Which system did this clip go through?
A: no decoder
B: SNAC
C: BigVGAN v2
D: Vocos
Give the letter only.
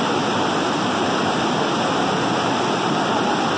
A